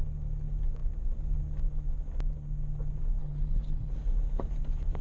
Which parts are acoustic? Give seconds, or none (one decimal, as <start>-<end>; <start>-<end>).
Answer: 0.0-3.2; 3.9-5.0